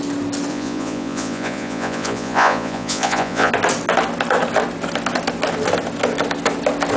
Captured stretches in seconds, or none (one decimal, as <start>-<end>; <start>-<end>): 0.0-0.5; 3.5-7.0